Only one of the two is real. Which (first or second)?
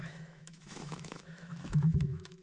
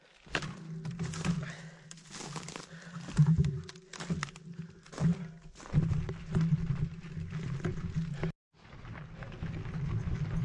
second